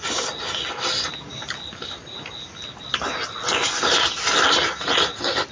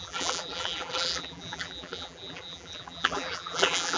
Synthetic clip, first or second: second